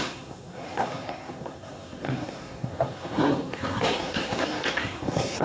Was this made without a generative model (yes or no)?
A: no